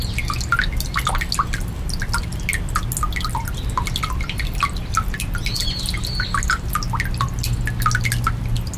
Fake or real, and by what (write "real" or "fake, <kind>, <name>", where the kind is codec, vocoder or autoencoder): real